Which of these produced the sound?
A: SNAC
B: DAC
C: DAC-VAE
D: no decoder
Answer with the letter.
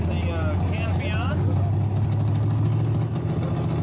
D